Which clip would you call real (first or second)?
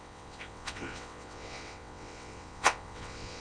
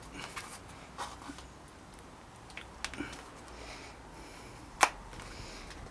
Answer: second